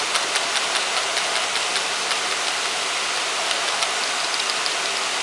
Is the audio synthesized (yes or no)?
no